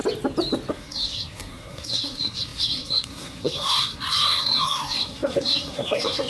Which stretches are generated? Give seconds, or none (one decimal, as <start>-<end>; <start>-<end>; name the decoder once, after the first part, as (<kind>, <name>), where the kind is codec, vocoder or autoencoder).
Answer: 0.7-6.3 (codec, SNAC)